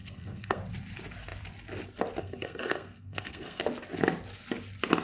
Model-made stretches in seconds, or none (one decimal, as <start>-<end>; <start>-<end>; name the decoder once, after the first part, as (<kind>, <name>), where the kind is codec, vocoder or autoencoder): 0.0-0.6 (codec, SNAC); 2.2-3.6